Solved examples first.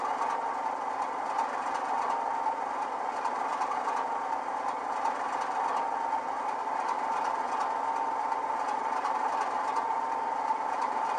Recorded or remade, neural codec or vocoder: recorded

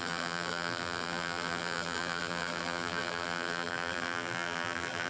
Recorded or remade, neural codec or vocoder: remade, vocoder, BigVGAN v2